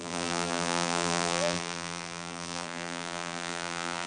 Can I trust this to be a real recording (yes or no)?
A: no